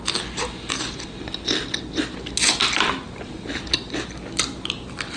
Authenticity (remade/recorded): recorded